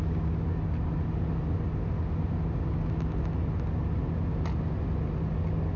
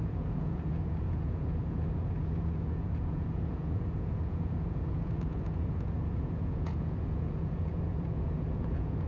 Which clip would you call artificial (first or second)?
second